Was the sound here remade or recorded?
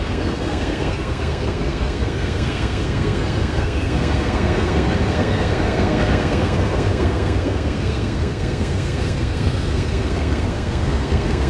remade